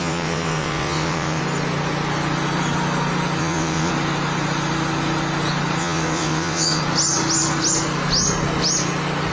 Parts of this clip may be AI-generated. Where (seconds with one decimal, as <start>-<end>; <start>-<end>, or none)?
0.0-1.4; 3.4-3.9; 5.8-6.8